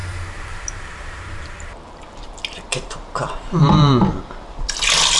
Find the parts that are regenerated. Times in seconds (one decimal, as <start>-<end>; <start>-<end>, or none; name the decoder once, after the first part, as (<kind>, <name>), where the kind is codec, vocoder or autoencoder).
0.0-2.3 (vocoder, BigVGAN v2); 2.7-4.2